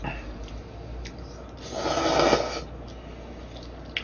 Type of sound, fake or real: real